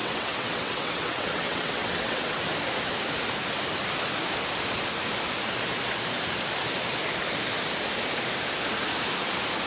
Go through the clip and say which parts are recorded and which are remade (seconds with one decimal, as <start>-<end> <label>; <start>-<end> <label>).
0.0-2.4 remade; 2.4-9.7 recorded